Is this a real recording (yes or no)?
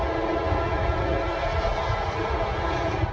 no